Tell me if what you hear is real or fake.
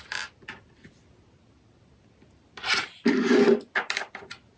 real